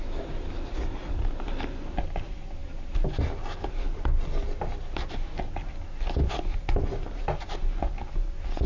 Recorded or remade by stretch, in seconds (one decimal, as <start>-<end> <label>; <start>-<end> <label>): 0.0-8.7 recorded